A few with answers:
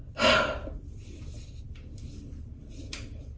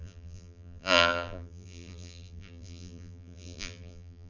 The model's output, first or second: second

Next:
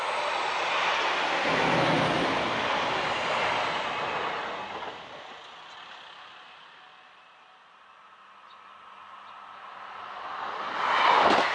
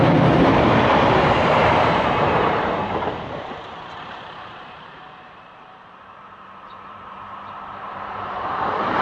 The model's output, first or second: second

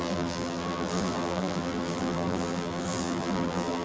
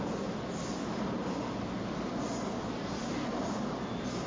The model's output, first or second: first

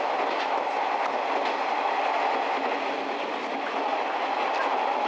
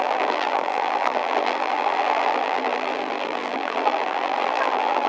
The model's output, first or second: second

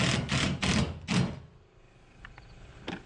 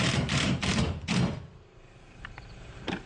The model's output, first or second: second